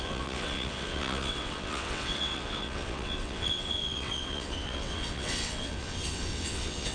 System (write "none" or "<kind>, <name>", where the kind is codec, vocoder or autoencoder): vocoder, WaveNeXt